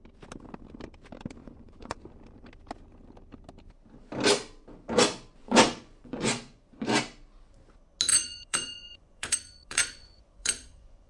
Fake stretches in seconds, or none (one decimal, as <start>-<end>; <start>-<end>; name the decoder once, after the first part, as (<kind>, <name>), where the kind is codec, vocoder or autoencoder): 1.4-2.1 (vocoder, Vocos); 5.4-7.0; 8.1-11.1